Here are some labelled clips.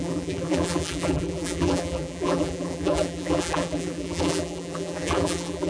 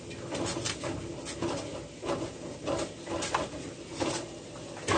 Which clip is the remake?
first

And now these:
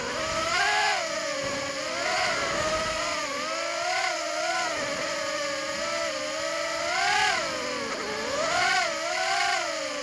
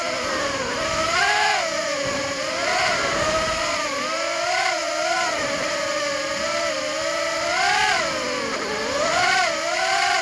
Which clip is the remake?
second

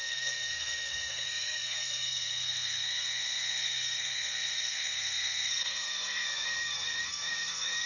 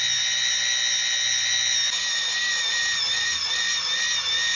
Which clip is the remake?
first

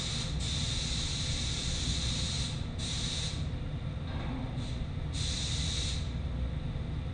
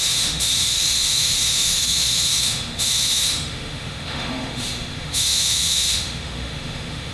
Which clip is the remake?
second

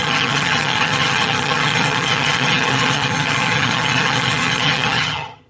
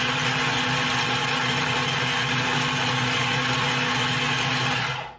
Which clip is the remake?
first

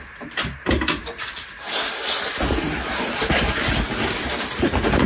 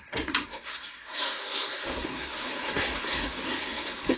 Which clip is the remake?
second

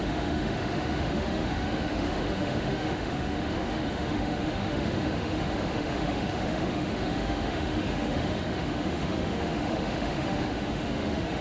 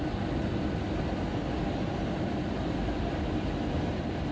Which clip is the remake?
first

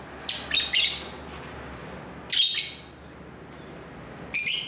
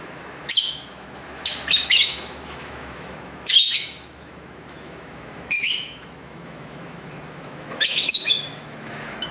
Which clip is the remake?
second